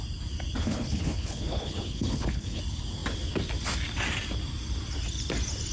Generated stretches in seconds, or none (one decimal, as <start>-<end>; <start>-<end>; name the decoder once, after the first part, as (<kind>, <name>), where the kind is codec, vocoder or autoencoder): 0.6-2.6 (codec, HILCodec)